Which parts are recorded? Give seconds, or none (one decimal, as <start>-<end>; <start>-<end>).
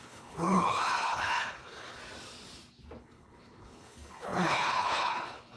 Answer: 2.0-3.0